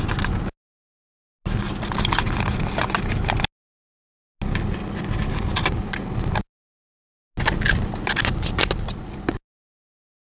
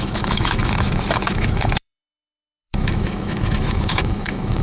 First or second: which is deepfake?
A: second